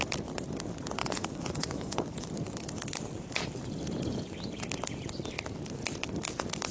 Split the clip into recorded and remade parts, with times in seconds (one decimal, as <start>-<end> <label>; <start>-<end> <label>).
0.0-1.0 recorded; 1.0-2.3 remade; 2.3-6.7 recorded